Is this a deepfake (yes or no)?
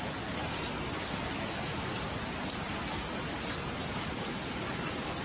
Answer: no